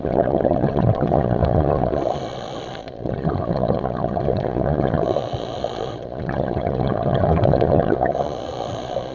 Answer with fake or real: fake